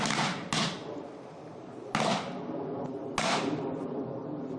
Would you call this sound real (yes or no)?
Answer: yes